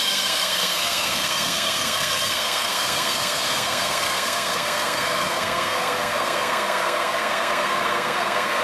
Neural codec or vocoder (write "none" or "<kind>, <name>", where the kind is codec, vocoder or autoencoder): codec, SNAC